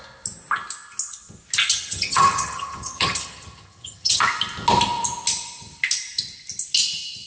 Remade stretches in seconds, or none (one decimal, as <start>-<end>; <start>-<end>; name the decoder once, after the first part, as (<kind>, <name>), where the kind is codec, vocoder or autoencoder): 1.7-4.2 (vocoder, HiFi-GAN)